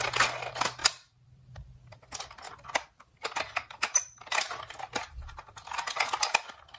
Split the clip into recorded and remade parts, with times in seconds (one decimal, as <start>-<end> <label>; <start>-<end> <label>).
0.0-0.8 recorded; 0.8-4.8 remade; 4.8-6.8 recorded